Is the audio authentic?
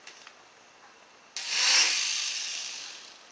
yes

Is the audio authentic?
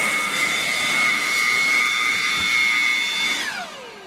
yes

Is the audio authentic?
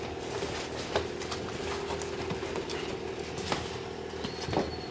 yes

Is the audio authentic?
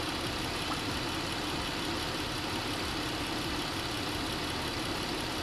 yes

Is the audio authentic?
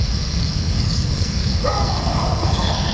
no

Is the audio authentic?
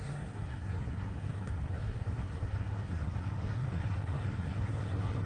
no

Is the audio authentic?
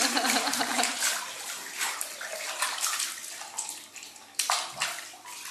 yes